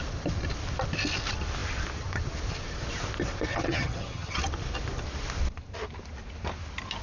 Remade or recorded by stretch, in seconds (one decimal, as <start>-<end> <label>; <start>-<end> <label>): 0.0-3.5 recorded; 3.5-4.4 remade; 4.4-7.0 recorded